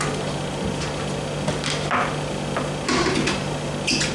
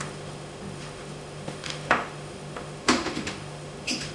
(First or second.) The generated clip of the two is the second